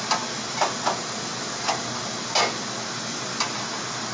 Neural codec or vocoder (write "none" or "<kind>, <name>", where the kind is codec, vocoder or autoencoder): none